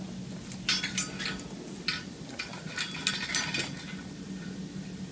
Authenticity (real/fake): real